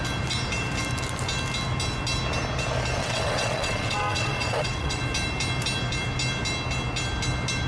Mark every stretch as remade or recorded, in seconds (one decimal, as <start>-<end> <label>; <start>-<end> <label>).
0.0-3.0 recorded; 3.0-5.0 remade; 5.0-7.7 recorded